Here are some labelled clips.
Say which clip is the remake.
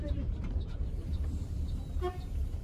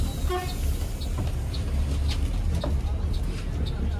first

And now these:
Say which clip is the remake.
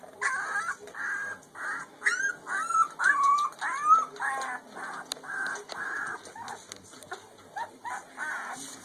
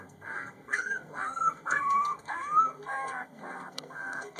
second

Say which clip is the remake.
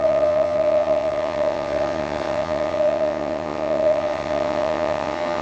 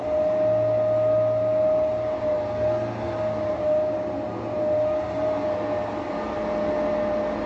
first